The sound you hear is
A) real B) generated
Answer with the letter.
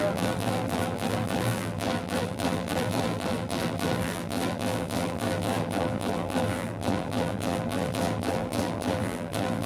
B